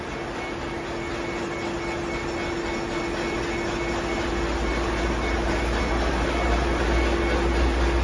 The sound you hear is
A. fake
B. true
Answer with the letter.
B